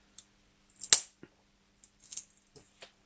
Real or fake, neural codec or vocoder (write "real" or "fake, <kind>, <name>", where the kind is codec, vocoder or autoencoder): real